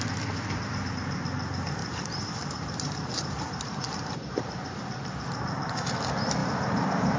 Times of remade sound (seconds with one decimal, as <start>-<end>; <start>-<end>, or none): 1.8-4.8; 6.4-7.2